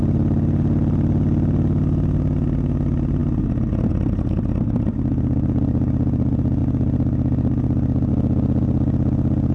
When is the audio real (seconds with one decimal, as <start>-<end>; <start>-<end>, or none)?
0.0-9.5